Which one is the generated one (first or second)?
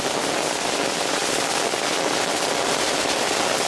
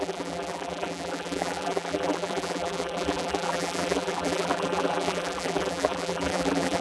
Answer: second